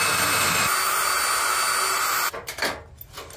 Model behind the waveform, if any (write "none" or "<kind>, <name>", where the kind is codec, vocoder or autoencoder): none